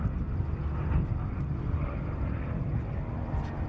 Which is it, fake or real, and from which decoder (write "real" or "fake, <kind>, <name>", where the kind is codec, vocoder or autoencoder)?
real